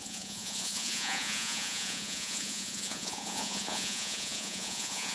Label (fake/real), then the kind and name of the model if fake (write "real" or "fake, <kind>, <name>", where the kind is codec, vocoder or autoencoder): fake, vocoder, Vocos